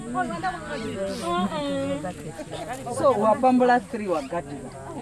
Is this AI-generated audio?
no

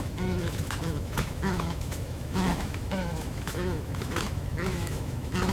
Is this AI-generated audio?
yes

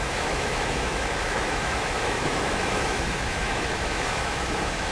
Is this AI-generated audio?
yes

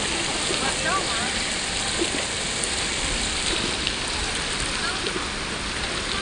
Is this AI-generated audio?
no